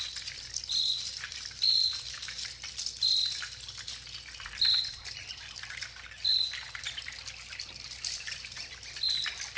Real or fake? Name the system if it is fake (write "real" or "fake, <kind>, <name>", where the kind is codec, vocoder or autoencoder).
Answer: real